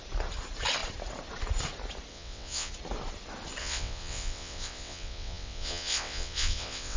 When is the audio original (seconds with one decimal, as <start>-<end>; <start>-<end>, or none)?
0.0-2.1; 2.7-3.6